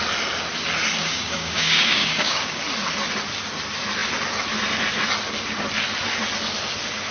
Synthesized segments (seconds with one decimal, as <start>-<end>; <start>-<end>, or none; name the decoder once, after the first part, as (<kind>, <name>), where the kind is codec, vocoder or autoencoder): 1.0-2.6 (codec, DAC)